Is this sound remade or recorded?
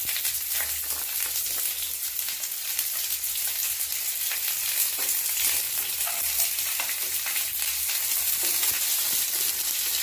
recorded